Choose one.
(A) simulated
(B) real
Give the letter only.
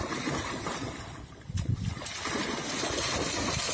B